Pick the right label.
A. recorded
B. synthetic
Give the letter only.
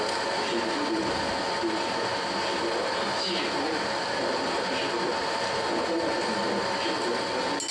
A